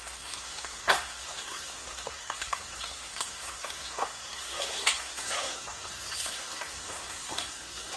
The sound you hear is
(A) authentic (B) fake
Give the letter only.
B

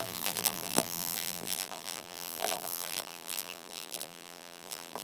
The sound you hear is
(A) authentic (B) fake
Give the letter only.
B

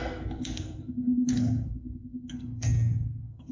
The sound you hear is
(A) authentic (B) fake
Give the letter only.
B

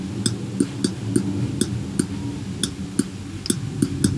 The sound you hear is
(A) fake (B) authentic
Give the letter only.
B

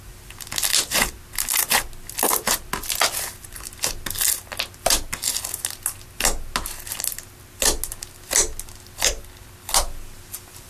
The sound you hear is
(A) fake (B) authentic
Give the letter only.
B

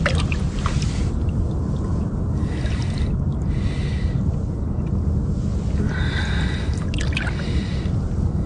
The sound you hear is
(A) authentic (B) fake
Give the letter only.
A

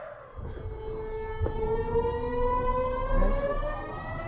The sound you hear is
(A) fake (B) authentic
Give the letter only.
B